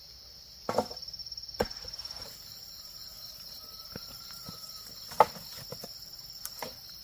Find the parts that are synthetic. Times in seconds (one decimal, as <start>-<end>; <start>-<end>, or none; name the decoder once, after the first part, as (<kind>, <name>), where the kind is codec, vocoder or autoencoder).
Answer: 1.2-5.0 (vocoder, BigVGAN v2)